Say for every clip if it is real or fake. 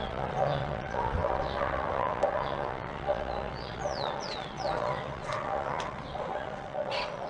fake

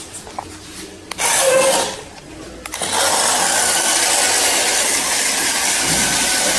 real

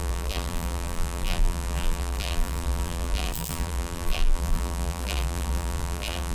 fake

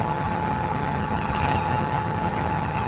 fake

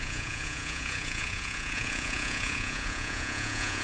fake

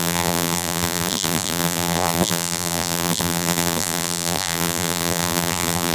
fake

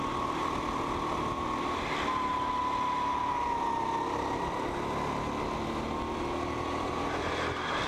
real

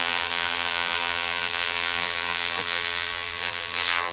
fake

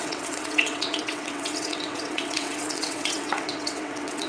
fake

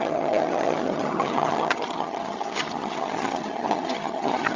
fake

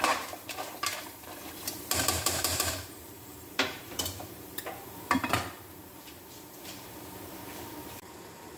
fake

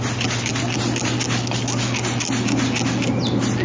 real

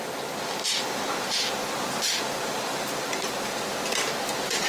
real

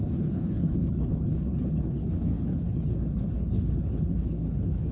fake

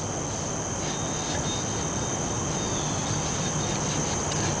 real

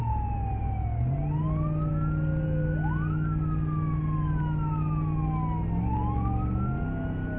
real